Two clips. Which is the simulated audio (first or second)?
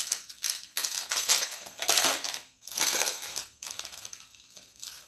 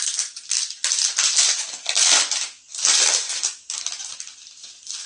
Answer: first